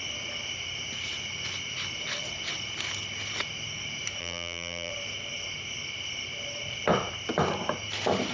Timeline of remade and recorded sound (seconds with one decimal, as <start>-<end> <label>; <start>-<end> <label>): 0.0-4.2 recorded; 4.2-4.9 remade; 4.9-8.3 recorded